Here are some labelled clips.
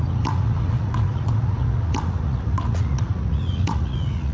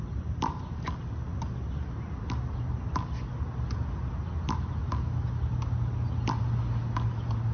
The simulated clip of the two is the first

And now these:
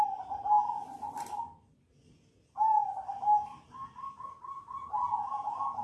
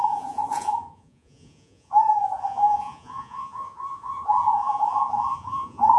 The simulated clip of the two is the second